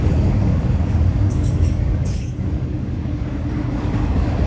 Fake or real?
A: fake